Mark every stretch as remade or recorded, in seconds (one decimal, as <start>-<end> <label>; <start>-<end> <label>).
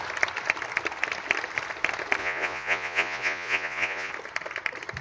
0.0-2.2 recorded; 2.2-4.1 remade; 4.1-5.0 recorded